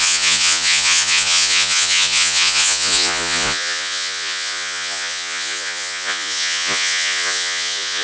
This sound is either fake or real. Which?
fake